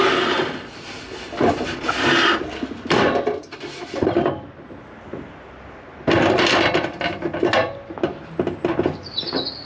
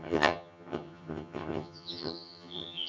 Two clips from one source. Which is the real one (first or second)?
first